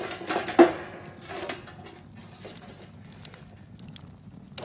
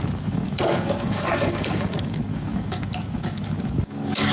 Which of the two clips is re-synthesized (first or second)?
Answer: second